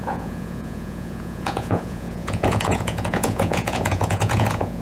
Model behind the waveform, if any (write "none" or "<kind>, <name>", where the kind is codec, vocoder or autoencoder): vocoder, Vocos